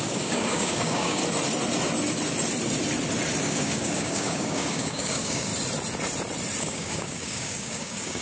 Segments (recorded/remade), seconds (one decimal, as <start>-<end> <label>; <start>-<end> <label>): 0.0-1.2 remade; 1.2-3.4 recorded; 3.4-5.5 remade; 5.5-6.6 recorded; 6.6-8.2 remade